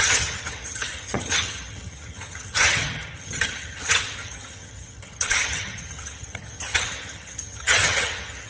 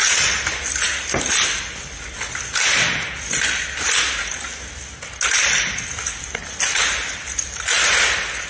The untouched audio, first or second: second